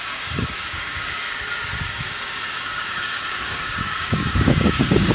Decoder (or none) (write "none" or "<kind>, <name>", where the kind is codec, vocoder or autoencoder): codec, DAC